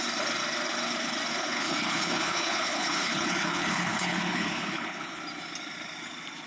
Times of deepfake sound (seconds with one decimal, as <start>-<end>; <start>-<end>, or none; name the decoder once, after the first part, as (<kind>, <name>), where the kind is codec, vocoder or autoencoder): 1.3-5.2 (codec, HILCodec)